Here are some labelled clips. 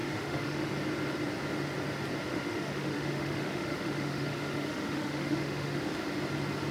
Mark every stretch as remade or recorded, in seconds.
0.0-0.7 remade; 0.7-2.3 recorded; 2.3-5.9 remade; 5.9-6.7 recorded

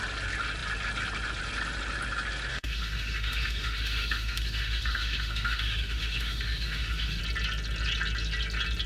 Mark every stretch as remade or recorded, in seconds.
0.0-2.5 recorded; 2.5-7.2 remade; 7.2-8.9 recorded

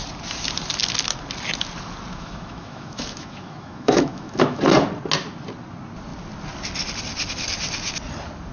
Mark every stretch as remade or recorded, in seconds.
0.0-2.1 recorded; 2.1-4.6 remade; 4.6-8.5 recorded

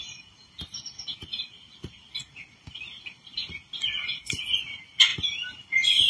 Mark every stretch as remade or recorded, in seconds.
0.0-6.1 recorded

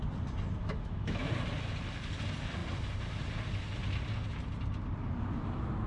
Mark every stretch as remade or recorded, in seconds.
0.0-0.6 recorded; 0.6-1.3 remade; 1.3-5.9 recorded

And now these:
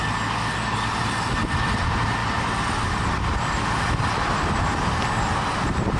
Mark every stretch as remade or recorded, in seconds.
0.0-6.0 recorded